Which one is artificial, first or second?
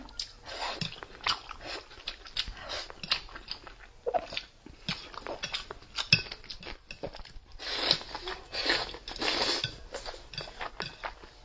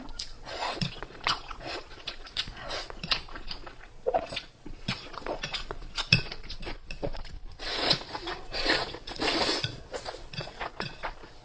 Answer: second